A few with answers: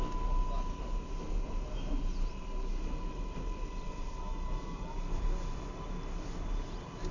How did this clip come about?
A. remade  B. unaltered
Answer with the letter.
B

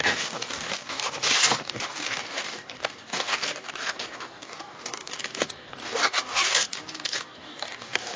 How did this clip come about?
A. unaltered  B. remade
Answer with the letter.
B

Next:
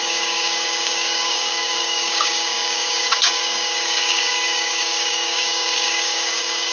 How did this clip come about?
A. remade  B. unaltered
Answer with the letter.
A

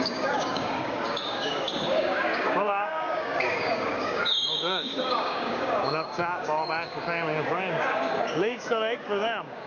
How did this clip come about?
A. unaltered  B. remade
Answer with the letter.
B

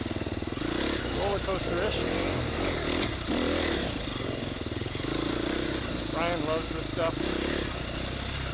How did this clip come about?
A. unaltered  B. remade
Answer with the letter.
A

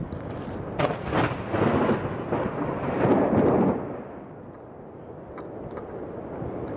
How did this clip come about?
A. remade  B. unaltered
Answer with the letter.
B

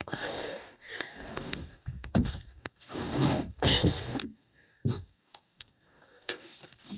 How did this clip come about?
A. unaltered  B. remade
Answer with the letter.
B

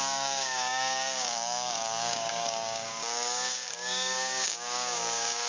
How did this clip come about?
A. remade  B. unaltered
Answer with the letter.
A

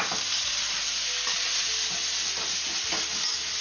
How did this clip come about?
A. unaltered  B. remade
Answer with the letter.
A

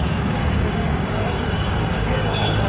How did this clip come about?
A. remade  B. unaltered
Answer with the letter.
A